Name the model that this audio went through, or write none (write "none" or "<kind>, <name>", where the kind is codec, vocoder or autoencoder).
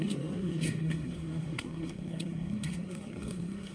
codec, SNAC